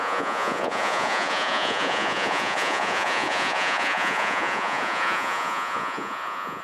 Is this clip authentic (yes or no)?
no